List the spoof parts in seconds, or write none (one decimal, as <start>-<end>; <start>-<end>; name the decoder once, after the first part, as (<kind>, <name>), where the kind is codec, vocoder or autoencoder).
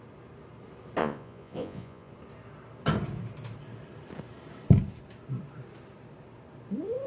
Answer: 1.0-2.1 (vocoder, Vocos)